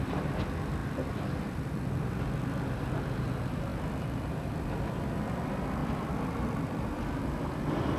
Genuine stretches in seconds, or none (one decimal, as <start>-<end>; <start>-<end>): 0.0-0.8; 2.2-3.7; 4.7-5.8; 7.2-8.0